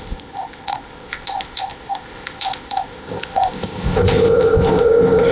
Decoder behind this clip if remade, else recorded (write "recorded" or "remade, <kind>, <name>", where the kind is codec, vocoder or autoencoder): remade, codec, ZipCodec